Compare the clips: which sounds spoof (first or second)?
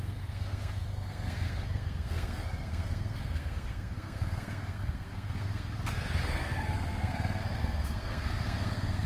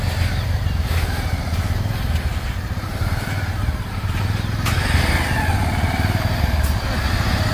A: first